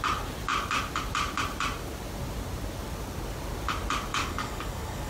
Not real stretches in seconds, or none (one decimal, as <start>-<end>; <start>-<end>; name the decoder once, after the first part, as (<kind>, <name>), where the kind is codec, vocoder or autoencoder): 4.1-5.1 (codec, DAC)